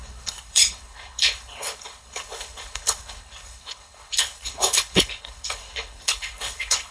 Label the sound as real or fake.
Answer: fake